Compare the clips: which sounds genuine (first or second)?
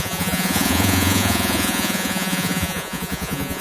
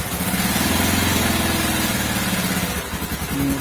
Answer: second